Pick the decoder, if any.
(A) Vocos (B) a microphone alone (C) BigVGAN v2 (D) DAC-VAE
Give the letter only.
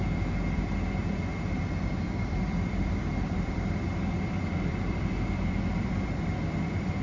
C